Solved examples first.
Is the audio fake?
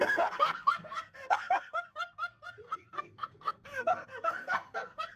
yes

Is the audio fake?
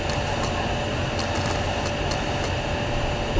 no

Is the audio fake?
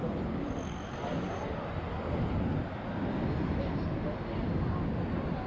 no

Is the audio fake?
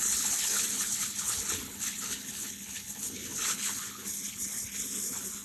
yes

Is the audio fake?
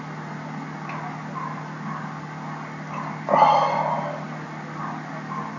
no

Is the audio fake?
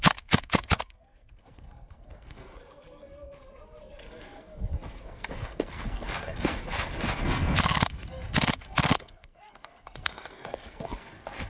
yes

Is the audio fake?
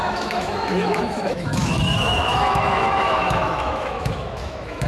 yes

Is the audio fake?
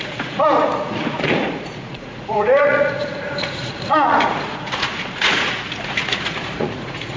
yes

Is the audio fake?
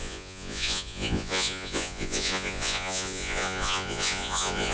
yes